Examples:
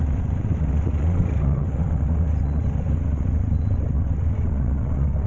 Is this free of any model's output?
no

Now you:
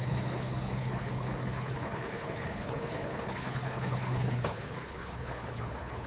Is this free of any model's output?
no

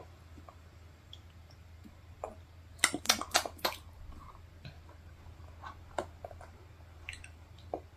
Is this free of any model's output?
yes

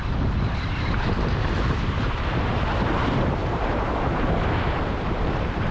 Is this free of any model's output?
no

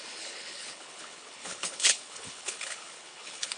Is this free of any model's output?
no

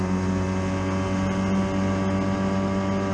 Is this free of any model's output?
yes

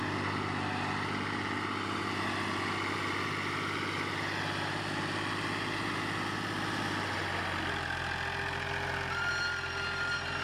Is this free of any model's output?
yes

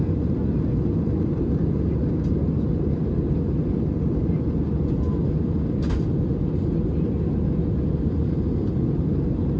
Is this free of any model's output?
yes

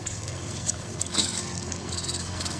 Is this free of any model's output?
no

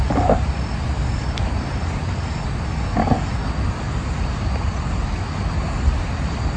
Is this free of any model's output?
yes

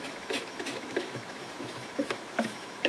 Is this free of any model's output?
no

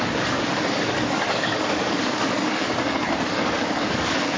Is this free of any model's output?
no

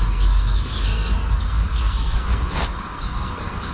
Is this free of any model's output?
no